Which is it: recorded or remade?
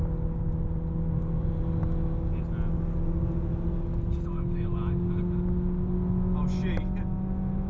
recorded